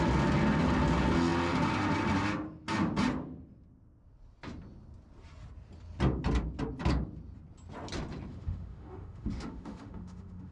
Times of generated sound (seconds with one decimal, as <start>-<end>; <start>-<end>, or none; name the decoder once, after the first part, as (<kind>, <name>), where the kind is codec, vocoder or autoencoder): 8.3-10.5 (autoencoder, DAC-VAE)